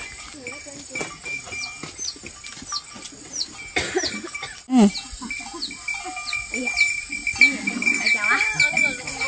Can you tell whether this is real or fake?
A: real